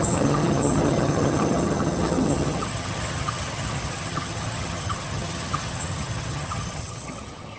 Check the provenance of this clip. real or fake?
fake